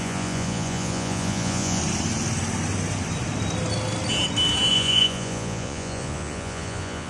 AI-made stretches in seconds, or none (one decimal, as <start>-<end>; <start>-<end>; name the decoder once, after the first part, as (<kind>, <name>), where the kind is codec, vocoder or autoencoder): 0.0-1.8 (vocoder, Vocos); 4.7-7.1